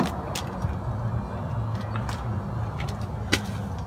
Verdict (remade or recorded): recorded